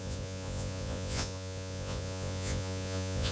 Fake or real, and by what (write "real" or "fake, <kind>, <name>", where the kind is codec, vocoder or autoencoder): fake, vocoder, Vocos